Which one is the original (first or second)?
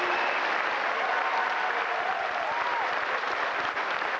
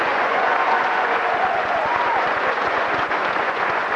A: first